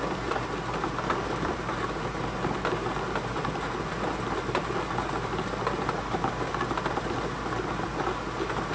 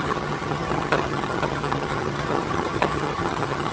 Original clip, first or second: first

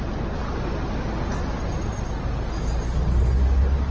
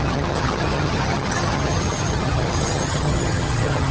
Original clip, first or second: first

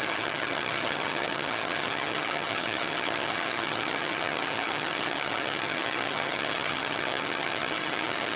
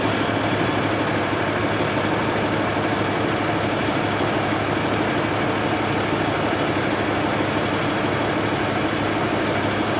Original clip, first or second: second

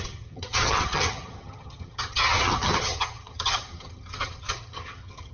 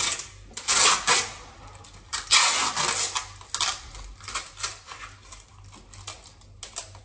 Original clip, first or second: second